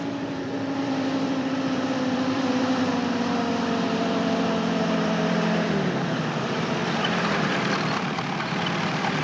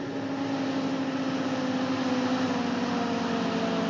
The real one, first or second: second